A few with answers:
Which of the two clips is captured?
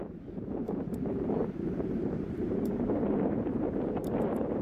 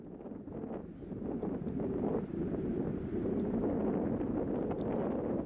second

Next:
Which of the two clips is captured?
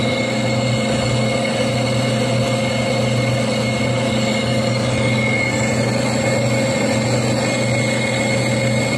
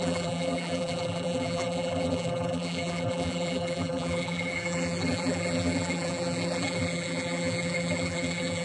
first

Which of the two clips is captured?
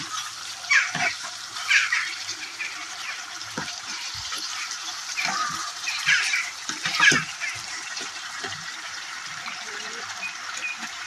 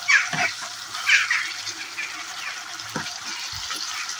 second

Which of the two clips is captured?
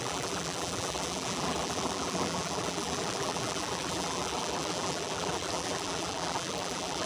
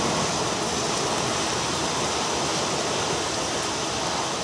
second